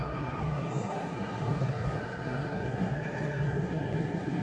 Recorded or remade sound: remade